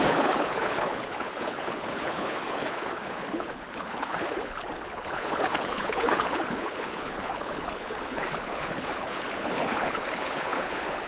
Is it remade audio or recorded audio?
remade